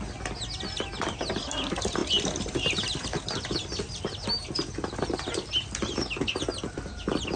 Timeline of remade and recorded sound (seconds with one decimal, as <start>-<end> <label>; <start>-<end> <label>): 0.0-7.4 recorded